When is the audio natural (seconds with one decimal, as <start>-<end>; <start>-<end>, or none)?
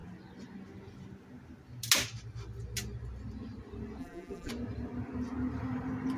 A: 0.0-4.0; 4.5-6.2